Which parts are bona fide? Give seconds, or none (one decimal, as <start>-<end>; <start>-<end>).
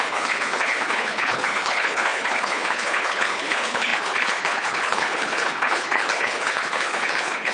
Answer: none